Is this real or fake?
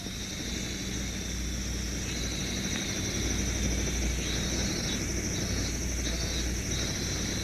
real